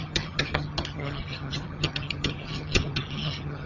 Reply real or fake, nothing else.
fake